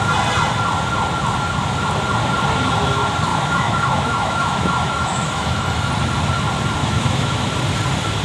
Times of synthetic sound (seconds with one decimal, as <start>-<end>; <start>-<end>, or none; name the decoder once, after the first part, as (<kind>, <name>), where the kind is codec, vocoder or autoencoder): 3.3-5.9 (autoencoder, DAC-VAE); 6.8-7.5